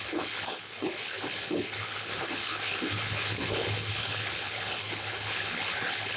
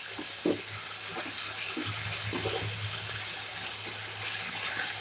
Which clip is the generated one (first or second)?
first